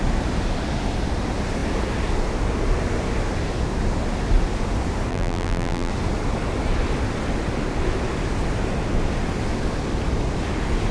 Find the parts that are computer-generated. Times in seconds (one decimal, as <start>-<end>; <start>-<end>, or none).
5.1-5.9